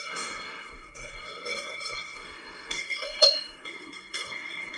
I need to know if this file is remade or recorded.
remade